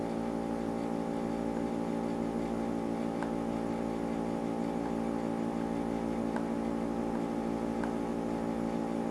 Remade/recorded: recorded